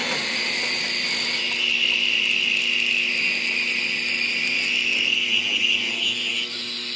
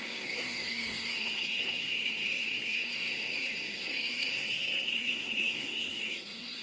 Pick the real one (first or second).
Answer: first